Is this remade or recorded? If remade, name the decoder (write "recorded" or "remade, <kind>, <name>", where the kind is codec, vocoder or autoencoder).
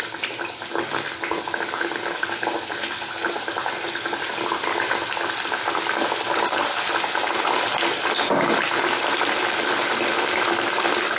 recorded